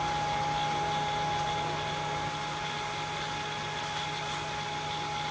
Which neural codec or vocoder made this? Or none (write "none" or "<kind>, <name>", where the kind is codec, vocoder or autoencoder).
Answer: none